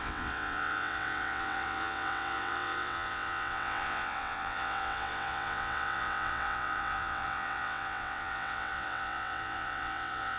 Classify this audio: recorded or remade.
remade